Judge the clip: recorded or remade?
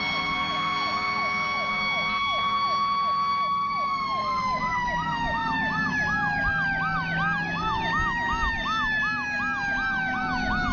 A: recorded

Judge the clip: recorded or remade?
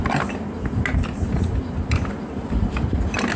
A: recorded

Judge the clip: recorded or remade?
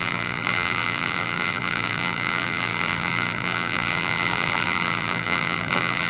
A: remade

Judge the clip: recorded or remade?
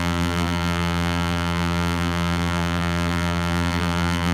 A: remade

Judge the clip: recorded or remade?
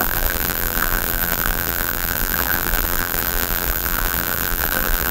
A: remade